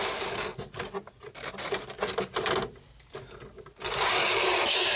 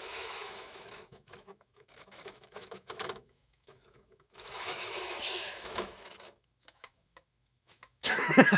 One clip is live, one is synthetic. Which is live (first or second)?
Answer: first